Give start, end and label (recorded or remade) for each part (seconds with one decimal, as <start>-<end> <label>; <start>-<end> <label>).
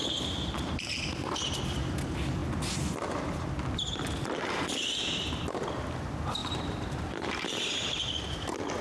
0.0-1.3 remade; 1.3-6.4 recorded; 6.4-7.6 remade; 7.6-8.8 recorded